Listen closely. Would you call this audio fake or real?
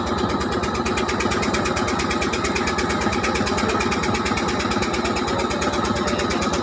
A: real